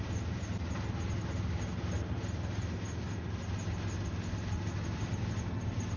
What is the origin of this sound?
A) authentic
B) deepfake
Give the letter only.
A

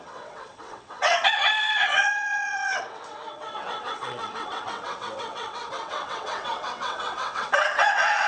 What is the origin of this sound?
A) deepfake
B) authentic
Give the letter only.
A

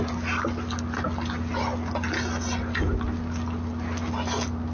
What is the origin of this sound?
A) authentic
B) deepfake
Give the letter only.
A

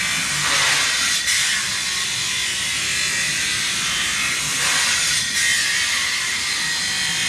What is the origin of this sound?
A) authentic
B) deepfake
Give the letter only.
A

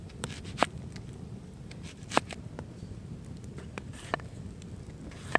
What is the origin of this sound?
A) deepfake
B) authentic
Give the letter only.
A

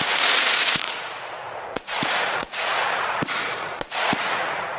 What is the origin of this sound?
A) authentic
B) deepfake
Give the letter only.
B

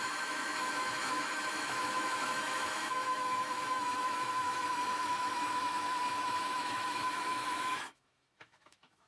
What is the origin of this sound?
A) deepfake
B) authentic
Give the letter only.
A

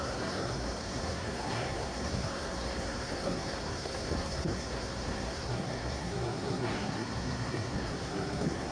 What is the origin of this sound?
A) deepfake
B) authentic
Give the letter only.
A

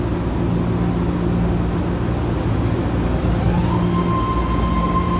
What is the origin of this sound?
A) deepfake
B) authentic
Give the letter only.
B